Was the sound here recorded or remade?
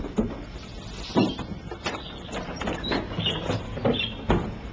recorded